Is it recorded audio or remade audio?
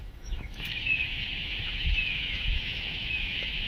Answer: remade